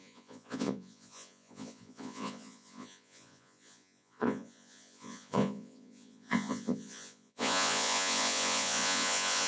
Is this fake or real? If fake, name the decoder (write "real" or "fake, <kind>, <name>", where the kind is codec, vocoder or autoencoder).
fake, vocoder, Vocos